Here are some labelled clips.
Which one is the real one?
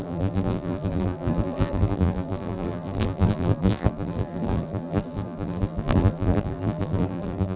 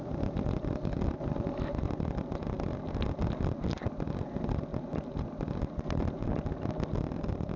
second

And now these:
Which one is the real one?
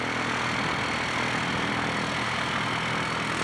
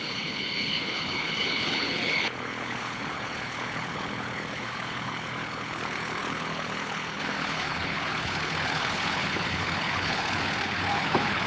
first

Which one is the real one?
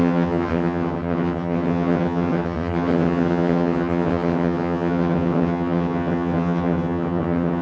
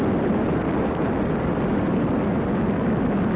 second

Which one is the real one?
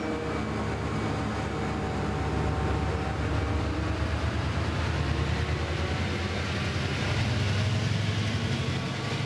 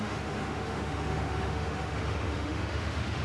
first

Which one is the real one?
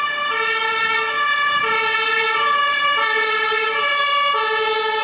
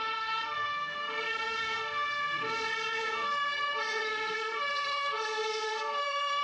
first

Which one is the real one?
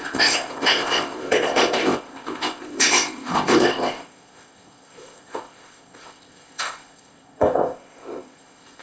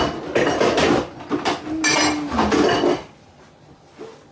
second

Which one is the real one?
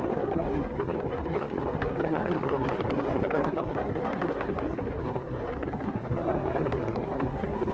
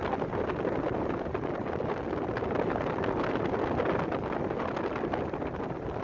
second